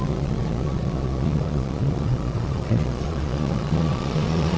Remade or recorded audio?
remade